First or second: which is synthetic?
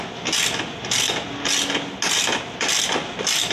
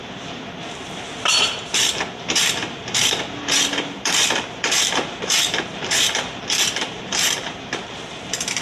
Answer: second